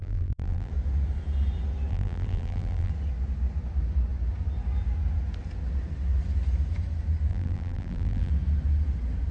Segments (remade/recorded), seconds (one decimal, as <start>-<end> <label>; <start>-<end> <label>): 0.0-0.7 remade; 0.7-1.9 recorded; 1.9-2.9 remade; 2.9-7.3 recorded; 7.3-8.3 remade; 8.3-9.3 recorded